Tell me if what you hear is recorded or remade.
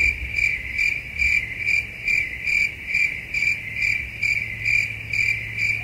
recorded